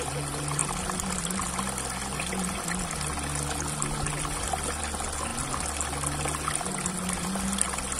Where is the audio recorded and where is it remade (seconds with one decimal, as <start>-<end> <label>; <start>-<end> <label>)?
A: 0.0-8.0 recorded